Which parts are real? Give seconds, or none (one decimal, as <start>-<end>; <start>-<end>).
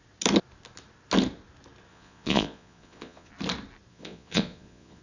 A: 0.0-1.9; 3.3-3.9